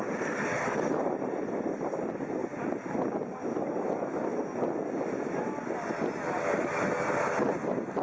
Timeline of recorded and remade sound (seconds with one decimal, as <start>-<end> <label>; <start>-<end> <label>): 0.0-8.0 recorded

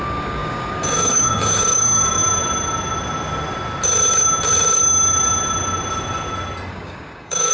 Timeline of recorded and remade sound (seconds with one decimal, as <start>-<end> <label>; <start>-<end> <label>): 0.0-2.2 remade; 2.2-6.7 recorded; 6.7-7.5 remade

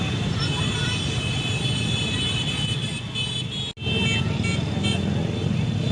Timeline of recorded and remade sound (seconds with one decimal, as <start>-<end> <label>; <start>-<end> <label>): 0.0-5.9 recorded

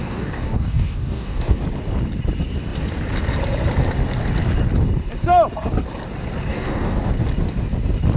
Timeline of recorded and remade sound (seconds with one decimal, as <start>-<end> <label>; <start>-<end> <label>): 0.0-1.6 remade; 1.6-6.5 recorded; 6.5-7.0 remade; 7.0-8.2 recorded

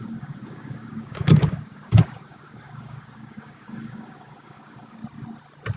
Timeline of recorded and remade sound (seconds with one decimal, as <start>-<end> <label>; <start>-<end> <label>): 0.0-5.0 remade; 5.0-5.8 recorded